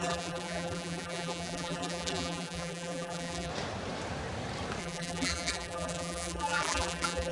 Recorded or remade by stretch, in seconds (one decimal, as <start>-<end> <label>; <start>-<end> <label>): 0.0-3.5 remade; 3.5-4.8 recorded; 4.8-7.3 remade